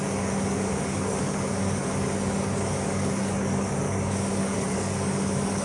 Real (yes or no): no